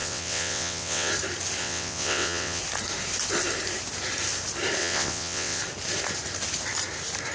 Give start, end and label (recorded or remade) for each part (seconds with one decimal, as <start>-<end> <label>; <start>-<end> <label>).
0.0-1.1 remade; 1.1-1.6 recorded; 1.6-2.6 remade; 2.6-4.8 recorded; 4.8-5.6 remade; 5.6-7.3 recorded